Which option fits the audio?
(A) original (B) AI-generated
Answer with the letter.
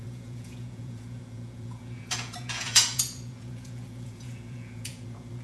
B